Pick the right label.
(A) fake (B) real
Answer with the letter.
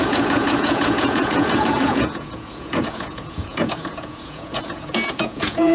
A